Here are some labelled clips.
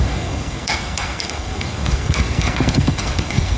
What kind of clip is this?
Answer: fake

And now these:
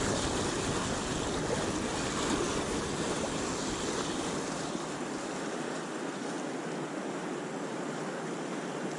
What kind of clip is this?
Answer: real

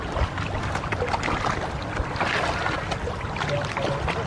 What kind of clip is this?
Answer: real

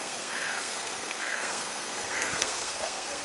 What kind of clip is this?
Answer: fake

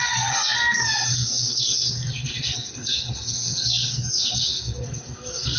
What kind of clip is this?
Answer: fake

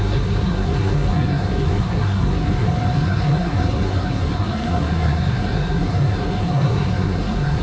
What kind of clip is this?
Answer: fake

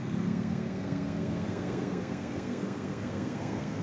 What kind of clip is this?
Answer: fake